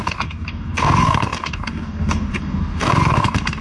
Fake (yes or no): yes